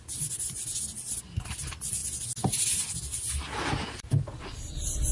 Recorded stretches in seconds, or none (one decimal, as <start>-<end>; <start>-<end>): 2.0-3.3